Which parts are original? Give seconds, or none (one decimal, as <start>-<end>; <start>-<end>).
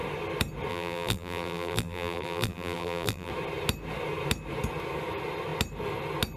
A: 0.0-0.7; 3.3-6.4